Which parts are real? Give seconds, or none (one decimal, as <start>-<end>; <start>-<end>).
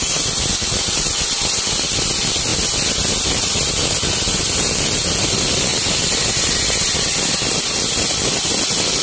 0.0-9.0